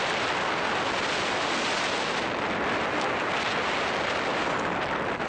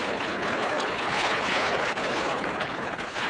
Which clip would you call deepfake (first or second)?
second